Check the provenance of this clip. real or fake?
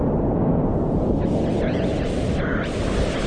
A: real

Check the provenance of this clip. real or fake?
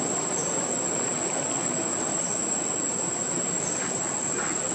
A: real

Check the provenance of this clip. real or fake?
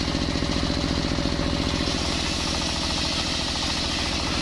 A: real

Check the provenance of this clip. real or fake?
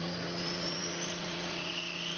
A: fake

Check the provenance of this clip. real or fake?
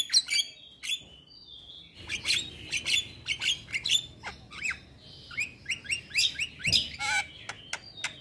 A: real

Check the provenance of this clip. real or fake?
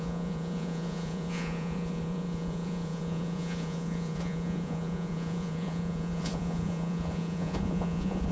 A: fake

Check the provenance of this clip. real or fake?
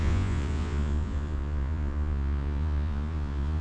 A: fake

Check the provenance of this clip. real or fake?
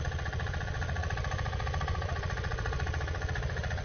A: fake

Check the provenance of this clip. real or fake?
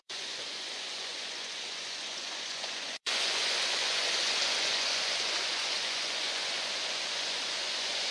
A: fake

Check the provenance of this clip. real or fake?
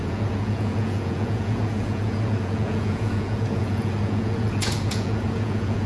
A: fake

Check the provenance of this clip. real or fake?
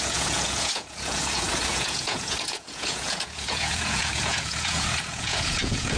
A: fake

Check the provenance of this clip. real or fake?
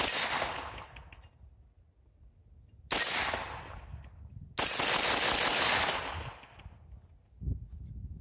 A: real